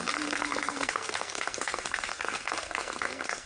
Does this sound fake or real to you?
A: fake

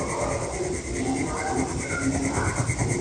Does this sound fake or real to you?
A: real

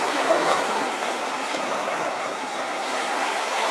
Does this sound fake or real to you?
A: fake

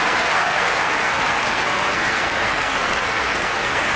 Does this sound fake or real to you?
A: fake